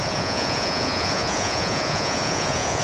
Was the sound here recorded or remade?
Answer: remade